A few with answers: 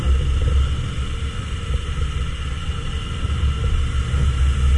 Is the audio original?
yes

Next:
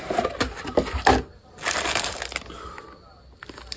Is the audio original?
yes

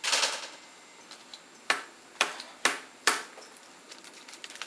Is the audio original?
yes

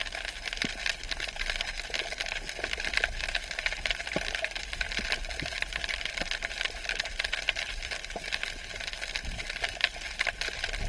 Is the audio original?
yes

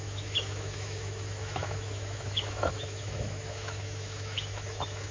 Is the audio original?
no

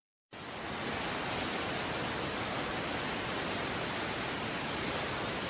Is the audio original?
yes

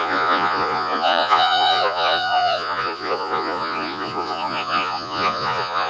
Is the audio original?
no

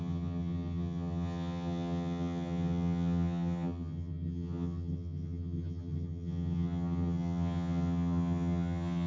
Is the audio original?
no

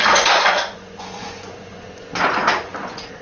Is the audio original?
no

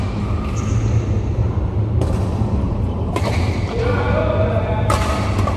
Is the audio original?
yes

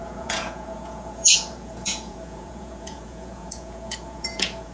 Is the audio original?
no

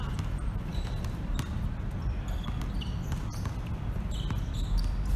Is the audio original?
yes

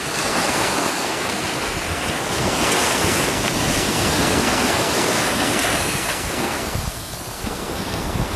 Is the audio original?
no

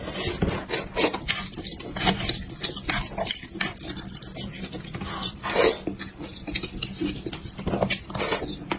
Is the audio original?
yes